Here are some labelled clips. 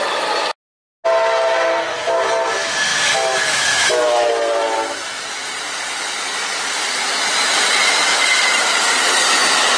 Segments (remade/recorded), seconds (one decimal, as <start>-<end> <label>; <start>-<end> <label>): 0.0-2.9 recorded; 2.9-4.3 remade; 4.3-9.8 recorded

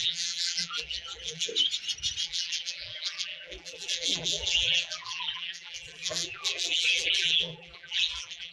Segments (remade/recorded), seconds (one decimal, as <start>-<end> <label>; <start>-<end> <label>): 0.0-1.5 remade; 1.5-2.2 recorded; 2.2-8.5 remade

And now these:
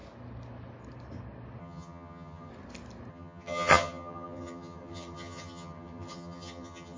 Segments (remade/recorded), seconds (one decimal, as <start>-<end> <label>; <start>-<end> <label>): 0.0-1.6 recorded; 1.6-2.5 remade; 2.5-3.1 recorded; 3.1-7.0 remade

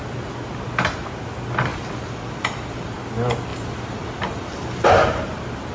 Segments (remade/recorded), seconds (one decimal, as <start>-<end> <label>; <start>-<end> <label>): 0.0-1.7 recorded; 1.7-3.0 remade; 3.0-3.5 recorded; 3.5-4.9 remade; 4.9-5.7 recorded

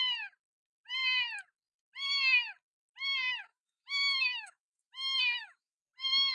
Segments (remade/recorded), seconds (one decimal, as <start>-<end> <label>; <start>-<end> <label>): 0.0-3.5 recorded; 3.5-5.8 remade; 5.8-6.3 recorded

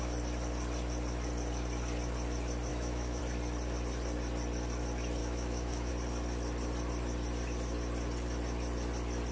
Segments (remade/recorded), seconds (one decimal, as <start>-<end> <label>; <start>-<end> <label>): 0.0-2.7 recorded; 2.7-3.2 remade; 3.2-5.2 recorded; 5.2-5.9 remade; 5.9-9.3 recorded